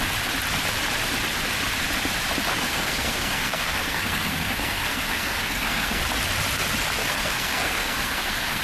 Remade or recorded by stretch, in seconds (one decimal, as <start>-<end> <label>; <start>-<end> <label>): 0.0-2.5 recorded; 2.5-6.0 remade; 6.0-7.0 recorded; 7.0-8.6 remade